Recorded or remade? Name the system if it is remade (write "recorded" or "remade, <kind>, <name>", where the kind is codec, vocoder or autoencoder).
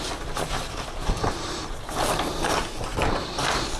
recorded